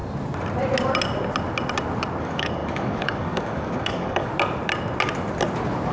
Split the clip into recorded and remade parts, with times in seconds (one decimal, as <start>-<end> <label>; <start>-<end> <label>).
0.0-2.2 recorded; 2.2-4.3 remade; 4.3-5.9 recorded